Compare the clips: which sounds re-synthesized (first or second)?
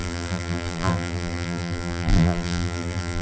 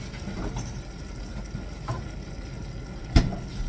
first